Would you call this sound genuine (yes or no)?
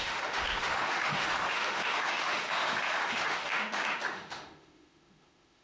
no